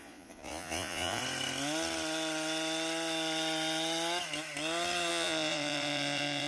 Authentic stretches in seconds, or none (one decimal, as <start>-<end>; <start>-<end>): 1.2-5.1